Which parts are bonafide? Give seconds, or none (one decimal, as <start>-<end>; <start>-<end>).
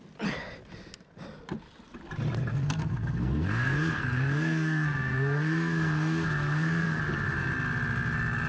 0.0-2.5; 7.0-8.5